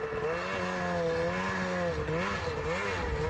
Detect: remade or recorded recorded